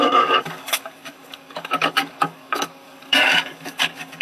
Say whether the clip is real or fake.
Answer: fake